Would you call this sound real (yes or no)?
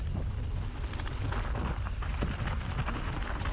yes